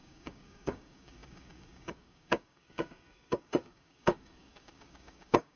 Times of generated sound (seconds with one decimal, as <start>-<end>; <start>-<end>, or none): 0.0-5.6